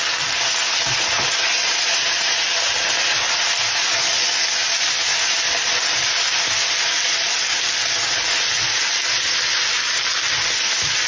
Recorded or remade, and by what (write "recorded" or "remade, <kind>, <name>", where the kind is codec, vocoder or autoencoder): recorded